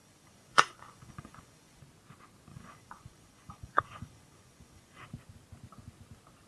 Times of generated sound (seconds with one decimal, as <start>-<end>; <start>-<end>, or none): 0.0-1.8; 2.5-5.0